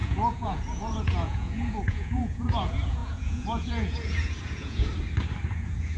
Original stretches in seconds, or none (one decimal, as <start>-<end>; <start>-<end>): 4.9-5.5